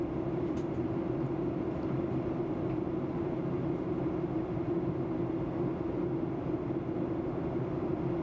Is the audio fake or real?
real